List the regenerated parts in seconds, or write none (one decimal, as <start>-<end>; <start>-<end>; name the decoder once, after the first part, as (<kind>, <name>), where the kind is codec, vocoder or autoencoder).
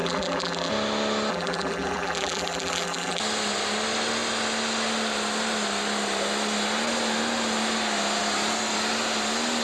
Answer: 0.0-0.7 (vocoder, BigVGAN v2); 1.3-3.2